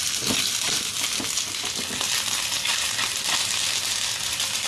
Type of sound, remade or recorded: recorded